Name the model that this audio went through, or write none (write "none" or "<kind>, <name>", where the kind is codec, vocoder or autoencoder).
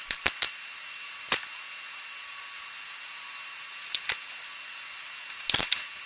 none